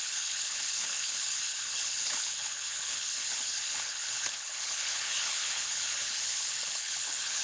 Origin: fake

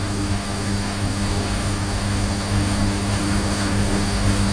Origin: fake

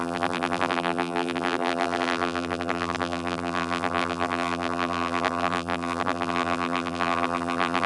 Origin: fake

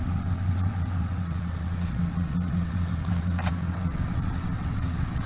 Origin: fake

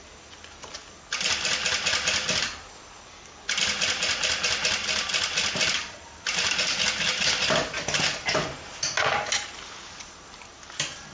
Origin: real